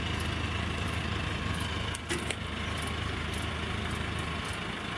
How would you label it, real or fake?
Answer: real